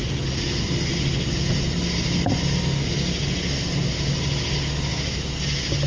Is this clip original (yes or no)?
yes